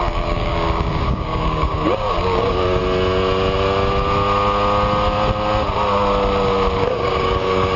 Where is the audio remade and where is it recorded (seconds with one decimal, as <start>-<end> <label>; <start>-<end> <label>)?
0.0-2.8 remade; 2.8-6.8 recorded; 6.8-7.8 remade